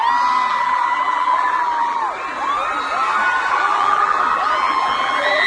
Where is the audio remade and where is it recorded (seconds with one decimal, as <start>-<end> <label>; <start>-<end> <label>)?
0.0-0.5 recorded; 0.5-2.0 remade; 2.0-3.5 recorded; 3.5-5.5 remade